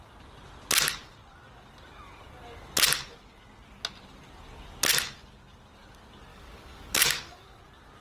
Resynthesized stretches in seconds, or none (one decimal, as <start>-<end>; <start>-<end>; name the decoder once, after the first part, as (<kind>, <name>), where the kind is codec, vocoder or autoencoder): 6.3-7.6 (codec, DAC)